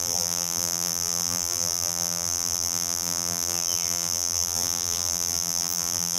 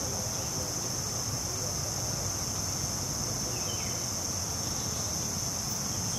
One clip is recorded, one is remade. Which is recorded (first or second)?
second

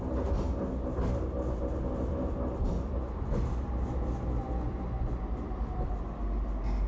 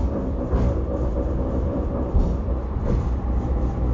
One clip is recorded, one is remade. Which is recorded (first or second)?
first